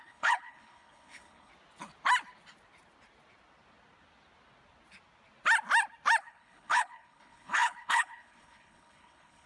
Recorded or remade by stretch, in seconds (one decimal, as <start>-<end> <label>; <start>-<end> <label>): 0.0-1.5 remade; 1.5-6.2 recorded; 6.2-9.5 remade